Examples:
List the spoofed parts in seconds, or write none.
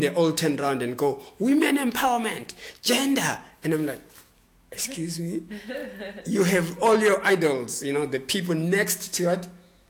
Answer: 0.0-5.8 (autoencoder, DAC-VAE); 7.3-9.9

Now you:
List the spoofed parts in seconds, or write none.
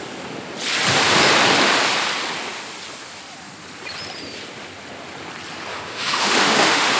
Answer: 5.7-7.0 (autoencoder, DAC-VAE)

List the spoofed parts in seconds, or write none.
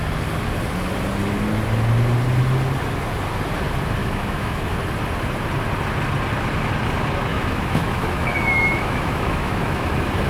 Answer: 4.0-4.8 (autoencoder, DAC-VAE); 7.3-9.9